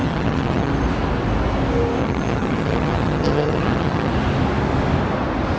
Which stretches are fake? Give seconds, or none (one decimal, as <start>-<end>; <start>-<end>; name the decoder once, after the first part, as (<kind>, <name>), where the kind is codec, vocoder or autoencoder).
0.0-0.7 (vocoder, HiFi-GAN); 2.0-4.1